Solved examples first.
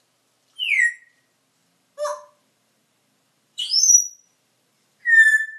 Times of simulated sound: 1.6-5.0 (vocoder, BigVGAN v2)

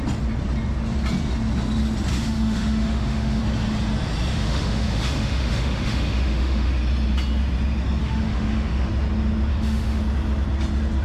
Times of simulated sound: 2.1-3.4 (autoencoder, DAC-VAE); 4.3-6.7; 8.0-8.9; 9.5-10.0